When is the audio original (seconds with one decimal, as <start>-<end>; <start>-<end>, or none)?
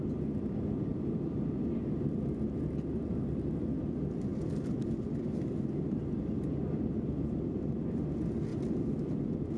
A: 0.0-0.9; 2.2-4.3; 7.7-8.5; 9.2-9.6